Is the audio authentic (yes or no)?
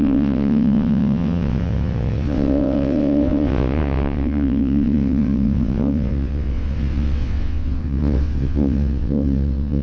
no